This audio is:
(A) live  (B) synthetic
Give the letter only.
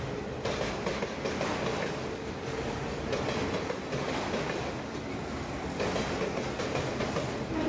A